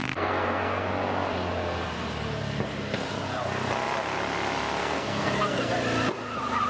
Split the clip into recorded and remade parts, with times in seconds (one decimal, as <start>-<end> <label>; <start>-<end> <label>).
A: 0.0-0.9 remade; 0.9-4.8 recorded; 4.8-5.7 remade; 5.7-6.7 recorded